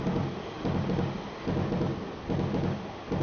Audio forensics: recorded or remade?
recorded